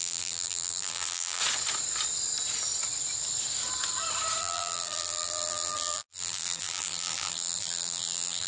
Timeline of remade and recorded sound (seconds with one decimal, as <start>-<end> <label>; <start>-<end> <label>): 0.0-1.4 remade; 1.4-4.4 recorded; 4.4-8.5 remade

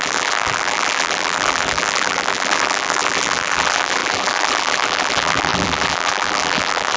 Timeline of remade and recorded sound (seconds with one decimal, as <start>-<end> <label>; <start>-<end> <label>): 0.0-7.0 remade

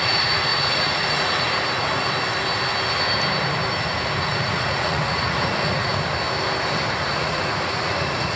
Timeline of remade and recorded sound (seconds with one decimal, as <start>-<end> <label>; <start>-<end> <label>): 0.0-1.5 remade; 1.5-4.2 recorded; 4.2-5.9 remade; 5.9-7.1 recorded; 7.1-8.4 remade

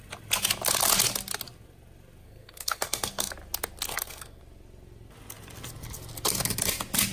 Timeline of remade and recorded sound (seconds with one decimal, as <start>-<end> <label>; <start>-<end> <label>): 0.0-2.2 recorded; 2.2-3.3 remade; 3.3-3.9 recorded; 3.9-4.4 remade; 4.4-7.1 recorded

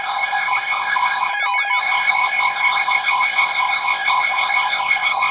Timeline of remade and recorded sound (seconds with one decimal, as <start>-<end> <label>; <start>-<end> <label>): 0.0-1.3 remade; 1.3-1.8 recorded; 1.8-5.3 remade